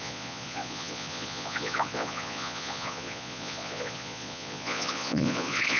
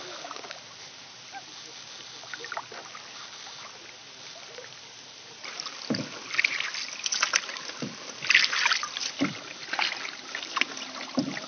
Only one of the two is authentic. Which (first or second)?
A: second